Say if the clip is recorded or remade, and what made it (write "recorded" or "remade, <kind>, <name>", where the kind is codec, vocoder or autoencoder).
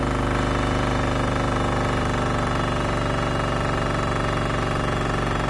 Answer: recorded